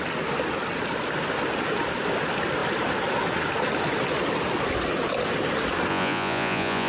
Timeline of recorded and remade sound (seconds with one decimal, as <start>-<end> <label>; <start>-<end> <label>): 0.0-5.9 recorded; 5.9-6.9 remade